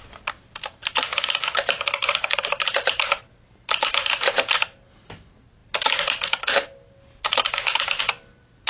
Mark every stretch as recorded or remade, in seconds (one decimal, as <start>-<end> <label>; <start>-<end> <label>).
0.0-8.7 recorded